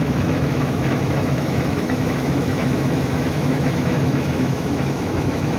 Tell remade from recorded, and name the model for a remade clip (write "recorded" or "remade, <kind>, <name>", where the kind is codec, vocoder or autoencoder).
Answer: remade, autoencoder, DAC-VAE